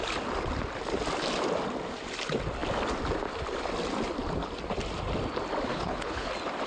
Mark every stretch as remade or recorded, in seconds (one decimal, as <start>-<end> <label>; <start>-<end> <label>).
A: 0.0-5.7 recorded; 5.7-6.3 remade; 6.3-6.7 recorded